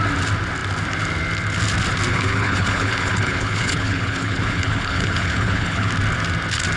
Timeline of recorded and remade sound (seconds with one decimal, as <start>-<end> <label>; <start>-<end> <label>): 0.0-2.1 recorded; 2.1-5.9 remade; 5.9-6.8 recorded